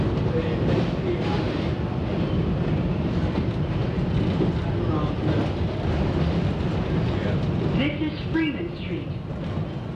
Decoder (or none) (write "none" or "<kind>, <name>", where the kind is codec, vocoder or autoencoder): none